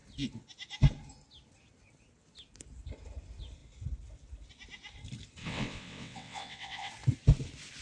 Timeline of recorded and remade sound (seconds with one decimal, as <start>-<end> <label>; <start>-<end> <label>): 0.0-5.4 recorded; 5.4-6.9 remade; 6.9-7.8 recorded